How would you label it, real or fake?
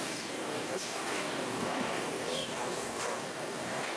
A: fake